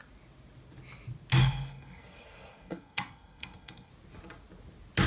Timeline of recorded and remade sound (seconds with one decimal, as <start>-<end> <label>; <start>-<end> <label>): 0.0-1.4 recorded; 1.4-3.9 remade; 3.9-5.1 recorded

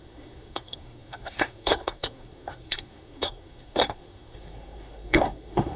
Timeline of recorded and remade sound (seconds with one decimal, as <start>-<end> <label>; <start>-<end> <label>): 0.0-5.8 remade

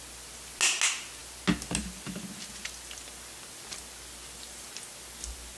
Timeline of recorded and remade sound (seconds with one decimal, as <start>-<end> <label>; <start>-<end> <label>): 0.0-5.6 recorded